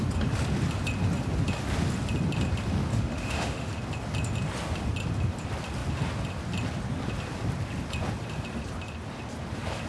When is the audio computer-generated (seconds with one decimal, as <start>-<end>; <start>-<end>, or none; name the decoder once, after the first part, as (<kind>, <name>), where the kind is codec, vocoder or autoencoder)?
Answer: 2.9-3.7 (autoencoder, DAC-VAE)